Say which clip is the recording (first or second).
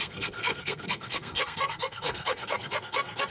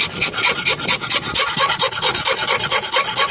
second